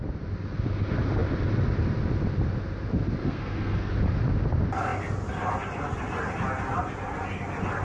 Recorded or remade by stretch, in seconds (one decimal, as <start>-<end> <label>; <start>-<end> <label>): 0.0-3.2 recorded; 3.2-3.9 remade; 3.9-7.8 recorded